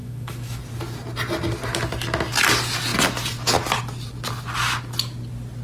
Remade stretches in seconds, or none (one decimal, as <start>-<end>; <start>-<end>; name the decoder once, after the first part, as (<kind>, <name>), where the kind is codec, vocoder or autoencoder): 0.0-0.6 (autoencoder, DAC-VAE)